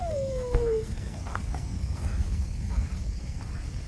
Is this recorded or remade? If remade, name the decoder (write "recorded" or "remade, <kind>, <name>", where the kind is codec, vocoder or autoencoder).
remade, codec, SNAC